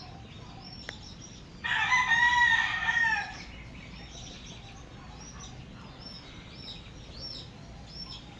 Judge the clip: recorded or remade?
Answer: recorded